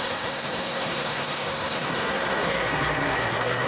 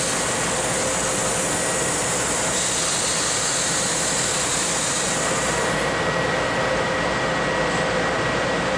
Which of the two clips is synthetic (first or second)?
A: first